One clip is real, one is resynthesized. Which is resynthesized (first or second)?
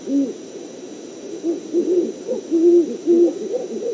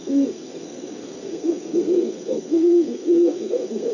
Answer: second